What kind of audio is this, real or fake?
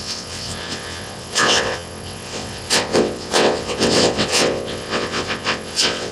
fake